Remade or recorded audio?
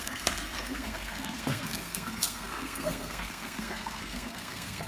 remade